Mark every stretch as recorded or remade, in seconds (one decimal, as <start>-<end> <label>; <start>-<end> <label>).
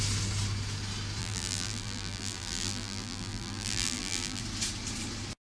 0.0-1.2 recorded; 1.2-4.4 remade; 4.4-5.4 recorded